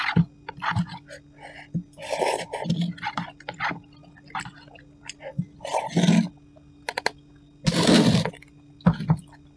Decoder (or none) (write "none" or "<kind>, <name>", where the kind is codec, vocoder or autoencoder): none